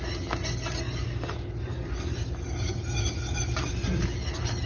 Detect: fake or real real